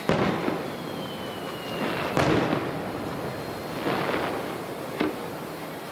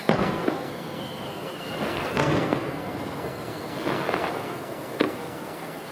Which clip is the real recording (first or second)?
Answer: first